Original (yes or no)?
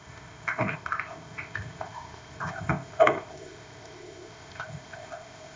no